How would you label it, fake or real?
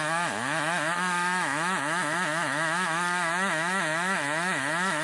fake